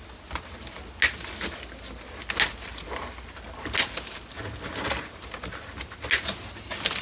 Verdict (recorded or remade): recorded